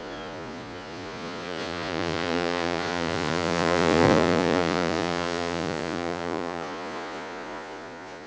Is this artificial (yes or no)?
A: yes